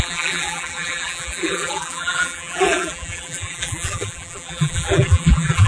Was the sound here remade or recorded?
remade